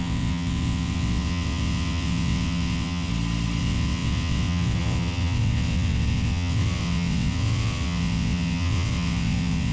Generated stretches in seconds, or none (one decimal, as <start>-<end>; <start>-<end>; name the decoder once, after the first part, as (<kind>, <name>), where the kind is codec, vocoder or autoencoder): 0.0-3.1 (vocoder, WaveNeXt); 3.6-9.7